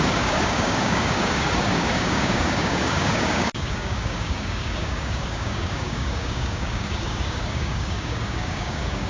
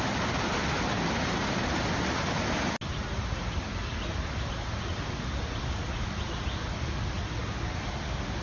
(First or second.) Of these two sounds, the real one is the second